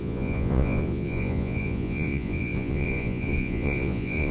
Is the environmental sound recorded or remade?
remade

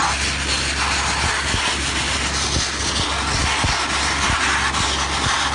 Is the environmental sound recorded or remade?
recorded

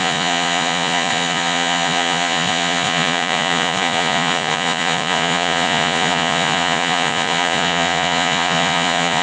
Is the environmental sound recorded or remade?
remade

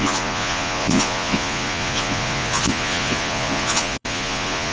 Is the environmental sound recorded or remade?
remade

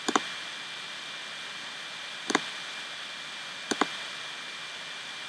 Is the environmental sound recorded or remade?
recorded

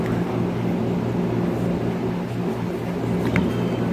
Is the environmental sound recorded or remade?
recorded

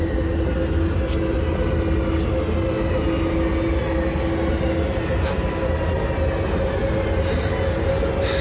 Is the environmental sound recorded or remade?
recorded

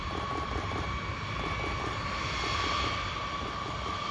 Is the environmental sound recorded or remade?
recorded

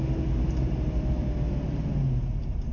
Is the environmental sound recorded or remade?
recorded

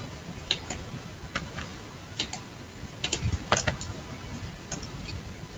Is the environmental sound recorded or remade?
recorded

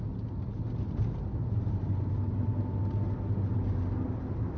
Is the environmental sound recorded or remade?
recorded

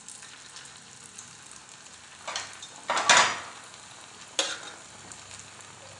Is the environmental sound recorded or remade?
recorded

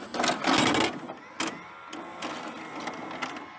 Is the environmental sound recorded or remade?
recorded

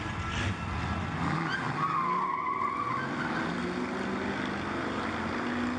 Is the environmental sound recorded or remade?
recorded